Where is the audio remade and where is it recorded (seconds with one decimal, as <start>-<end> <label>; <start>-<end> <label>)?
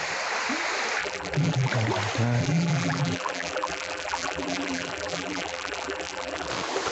0.0-1.0 recorded; 1.0-1.7 remade; 1.7-2.4 recorded; 2.4-6.5 remade; 6.5-6.9 recorded